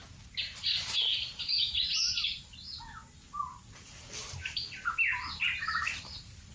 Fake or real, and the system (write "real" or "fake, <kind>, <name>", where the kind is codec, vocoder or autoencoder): real